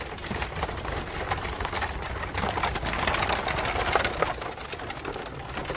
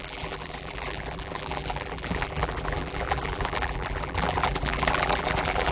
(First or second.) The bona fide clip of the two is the first